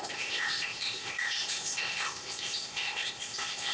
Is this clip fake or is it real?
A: fake